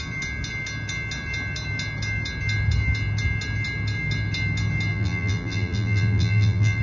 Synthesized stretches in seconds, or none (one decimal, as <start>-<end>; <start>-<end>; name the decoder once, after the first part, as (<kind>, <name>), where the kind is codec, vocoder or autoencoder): 4.9-6.8 (vocoder, BigVGAN v2)